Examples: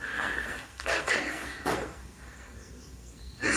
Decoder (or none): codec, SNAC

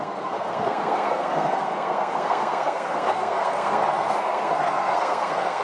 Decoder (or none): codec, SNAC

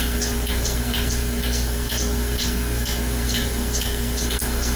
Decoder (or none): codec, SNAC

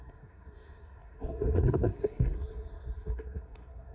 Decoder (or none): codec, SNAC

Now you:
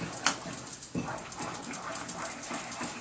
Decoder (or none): none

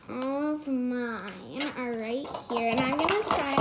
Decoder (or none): none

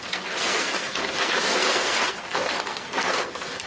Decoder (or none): codec, SNAC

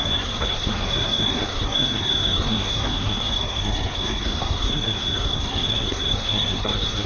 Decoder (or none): codec, SNAC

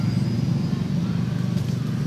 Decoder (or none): none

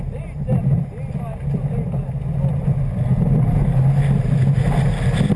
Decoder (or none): none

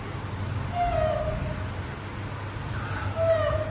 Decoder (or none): none